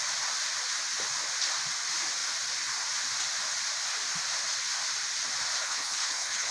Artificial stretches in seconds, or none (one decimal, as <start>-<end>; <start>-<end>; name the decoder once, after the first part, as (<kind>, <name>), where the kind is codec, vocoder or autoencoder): 5.6-6.5 (codec, HILCodec)